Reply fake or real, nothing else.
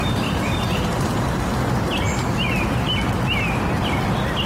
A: real